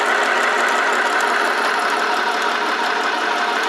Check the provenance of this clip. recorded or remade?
recorded